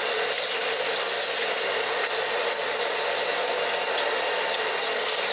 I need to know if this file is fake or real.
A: real